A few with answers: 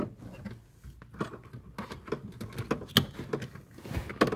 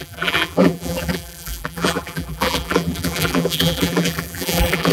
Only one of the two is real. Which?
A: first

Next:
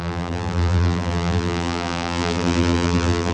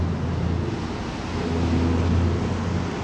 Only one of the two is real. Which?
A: second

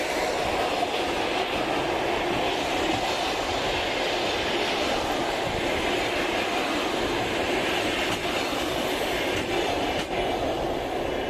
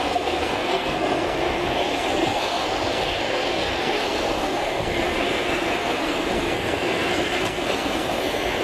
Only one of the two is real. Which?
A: first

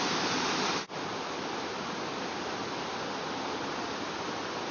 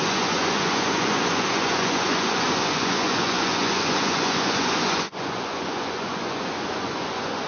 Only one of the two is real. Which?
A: first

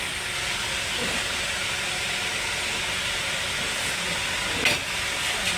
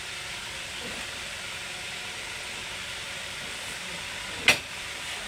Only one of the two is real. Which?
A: first